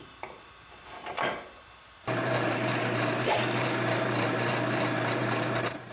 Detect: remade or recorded remade